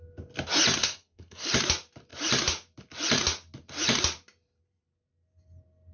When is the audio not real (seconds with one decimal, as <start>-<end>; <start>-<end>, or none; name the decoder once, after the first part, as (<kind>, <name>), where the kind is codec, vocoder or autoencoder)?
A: 0.8-1.5 (codec, SNAC)